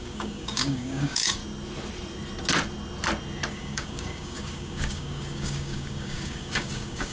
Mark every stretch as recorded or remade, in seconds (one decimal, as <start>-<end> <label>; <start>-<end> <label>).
0.0-1.4 remade; 1.4-3.5 recorded; 3.5-7.1 remade